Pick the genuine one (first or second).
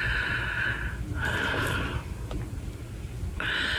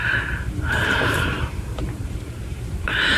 first